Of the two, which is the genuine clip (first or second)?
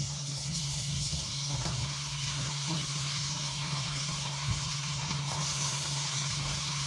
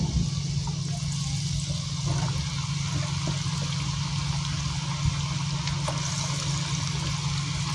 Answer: second